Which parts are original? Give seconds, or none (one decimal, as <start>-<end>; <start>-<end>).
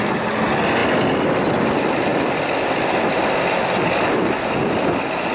0.0-5.3